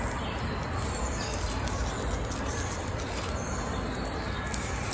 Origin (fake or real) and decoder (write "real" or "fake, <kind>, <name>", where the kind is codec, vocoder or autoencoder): real